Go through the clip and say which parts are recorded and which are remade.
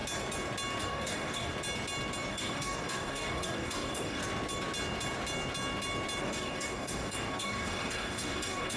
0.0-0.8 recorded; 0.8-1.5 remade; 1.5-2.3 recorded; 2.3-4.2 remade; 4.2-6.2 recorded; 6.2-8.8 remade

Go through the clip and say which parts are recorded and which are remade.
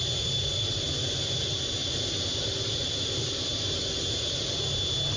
0.0-5.2 recorded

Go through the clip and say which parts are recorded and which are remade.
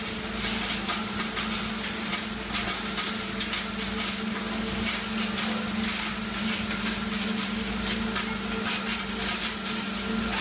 0.0-10.4 recorded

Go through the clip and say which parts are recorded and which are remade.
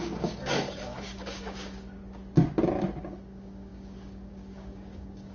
0.0-2.0 remade; 2.0-3.0 recorded; 3.0-5.3 remade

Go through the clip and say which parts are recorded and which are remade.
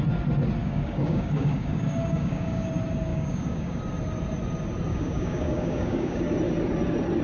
0.0-0.6 recorded; 0.6-2.7 remade; 2.7-3.1 recorded; 3.1-3.8 remade; 3.8-4.9 recorded; 4.9-6.2 remade; 6.2-7.2 recorded